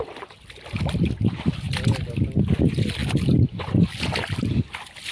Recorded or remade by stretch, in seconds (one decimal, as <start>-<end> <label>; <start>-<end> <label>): 0.0-5.1 recorded